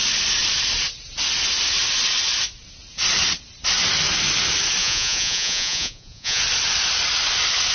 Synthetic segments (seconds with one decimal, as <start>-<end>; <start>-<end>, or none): 4.8-6.4